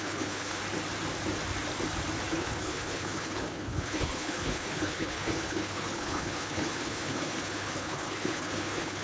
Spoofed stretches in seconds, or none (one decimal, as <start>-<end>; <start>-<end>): 0.0-0.6; 2.3-9.0